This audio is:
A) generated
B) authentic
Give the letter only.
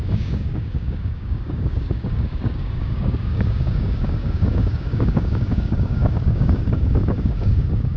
A